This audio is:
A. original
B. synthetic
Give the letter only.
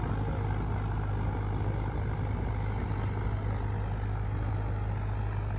A